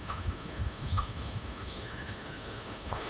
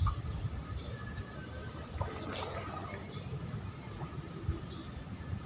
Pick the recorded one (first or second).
second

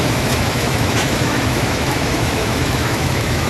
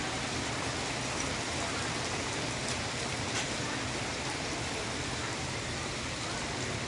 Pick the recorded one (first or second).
second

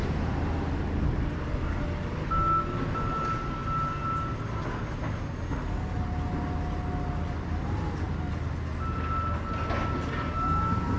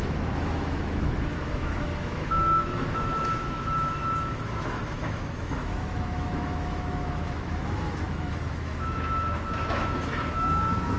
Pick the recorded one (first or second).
first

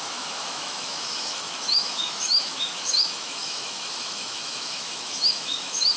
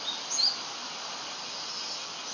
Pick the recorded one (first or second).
second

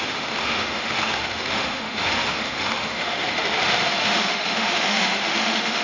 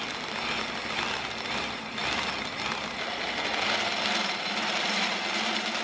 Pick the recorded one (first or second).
second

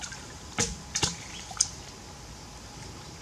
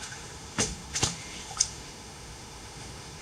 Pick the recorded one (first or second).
first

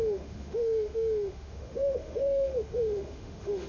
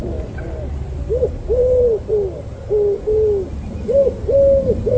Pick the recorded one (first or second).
second